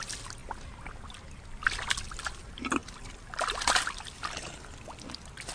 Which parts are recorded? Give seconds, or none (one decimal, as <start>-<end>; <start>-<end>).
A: 0.0-5.5